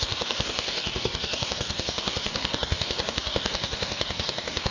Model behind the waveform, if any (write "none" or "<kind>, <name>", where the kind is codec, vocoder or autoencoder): codec, DAC